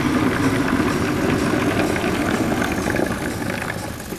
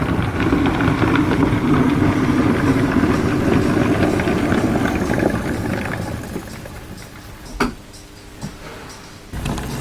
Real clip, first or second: first